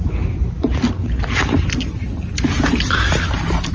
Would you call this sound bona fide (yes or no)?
yes